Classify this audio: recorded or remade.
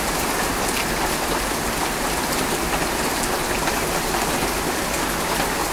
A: recorded